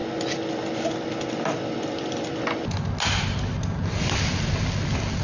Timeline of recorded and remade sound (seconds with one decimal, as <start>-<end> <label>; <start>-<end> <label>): 0.0-5.2 recorded